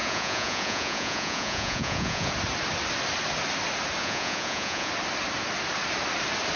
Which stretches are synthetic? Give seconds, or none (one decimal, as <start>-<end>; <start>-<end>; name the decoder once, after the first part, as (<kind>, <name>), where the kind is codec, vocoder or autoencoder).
0.0-2.3 (vocoder, Vocos); 4.0-4.9